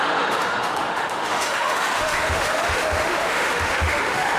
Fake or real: fake